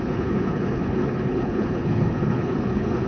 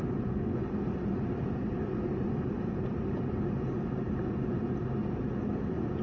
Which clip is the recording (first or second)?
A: second